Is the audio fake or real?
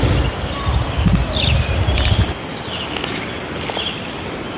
real